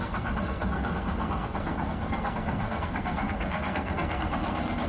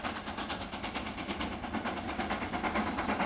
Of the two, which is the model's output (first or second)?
first